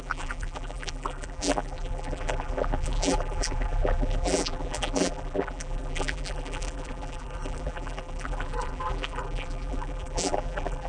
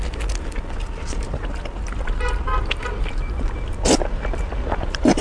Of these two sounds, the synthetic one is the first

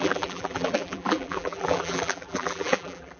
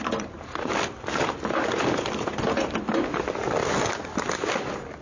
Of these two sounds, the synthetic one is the first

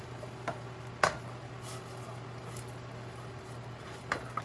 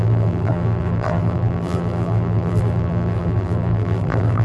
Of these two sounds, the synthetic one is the second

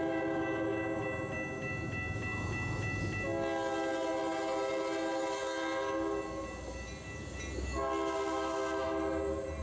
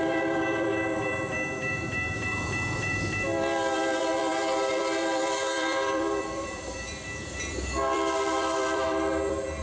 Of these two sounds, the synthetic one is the second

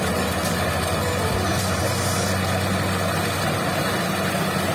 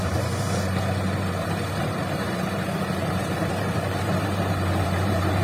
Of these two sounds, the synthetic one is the second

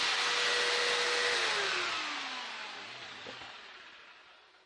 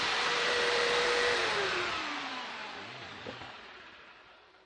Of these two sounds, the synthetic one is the second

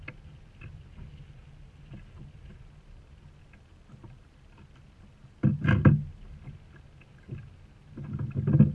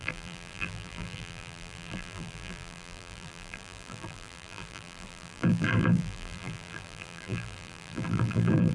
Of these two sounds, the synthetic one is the second